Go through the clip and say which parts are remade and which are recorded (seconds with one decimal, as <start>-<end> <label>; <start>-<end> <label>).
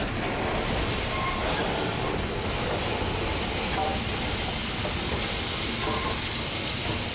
0.0-7.1 recorded